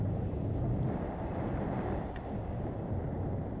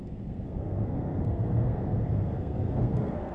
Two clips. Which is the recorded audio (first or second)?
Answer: first